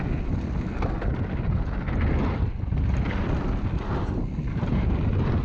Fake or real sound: real